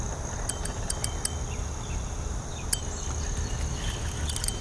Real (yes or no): yes